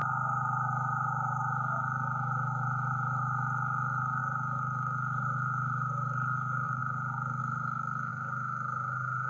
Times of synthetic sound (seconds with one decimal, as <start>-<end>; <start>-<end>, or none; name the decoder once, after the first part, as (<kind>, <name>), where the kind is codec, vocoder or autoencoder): 0.0-6.8 (autoencoder, DAC-VAE); 7.4-8.1